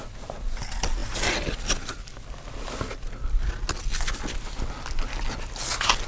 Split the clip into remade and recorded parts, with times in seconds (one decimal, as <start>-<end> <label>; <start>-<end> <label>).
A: 0.0-6.1 recorded

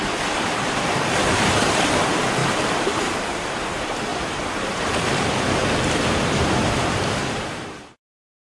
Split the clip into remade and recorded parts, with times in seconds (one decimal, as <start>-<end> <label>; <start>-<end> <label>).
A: 0.0-8.5 remade

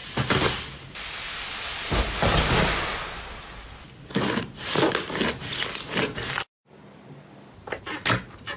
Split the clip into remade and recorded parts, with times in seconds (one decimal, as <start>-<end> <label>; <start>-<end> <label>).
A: 0.0-8.6 recorded